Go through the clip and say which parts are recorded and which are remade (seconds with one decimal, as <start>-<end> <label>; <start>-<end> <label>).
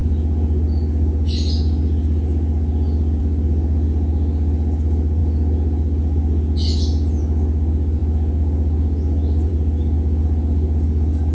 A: 0.0-11.3 recorded